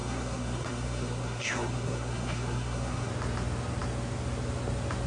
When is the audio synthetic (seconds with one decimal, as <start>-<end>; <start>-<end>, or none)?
0.0-3.1